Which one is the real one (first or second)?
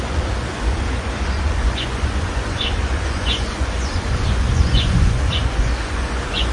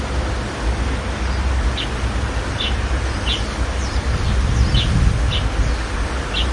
second